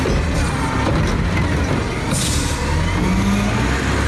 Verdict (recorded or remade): recorded